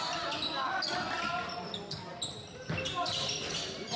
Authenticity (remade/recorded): recorded